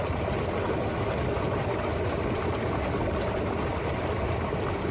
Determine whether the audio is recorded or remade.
recorded